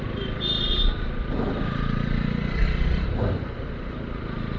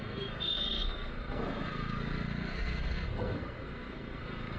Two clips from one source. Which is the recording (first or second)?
first